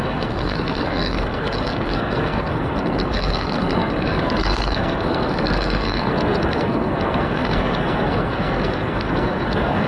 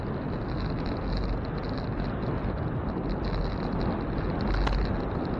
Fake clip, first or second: first